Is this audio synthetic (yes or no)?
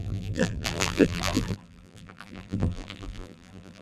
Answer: yes